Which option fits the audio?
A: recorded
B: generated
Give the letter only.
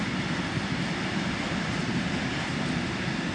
A